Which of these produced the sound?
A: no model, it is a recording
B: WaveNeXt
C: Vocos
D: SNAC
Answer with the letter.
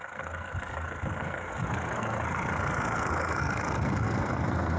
D